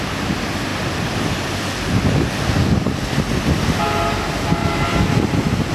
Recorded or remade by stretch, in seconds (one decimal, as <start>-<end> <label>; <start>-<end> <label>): 0.0-4.6 recorded; 4.6-5.7 remade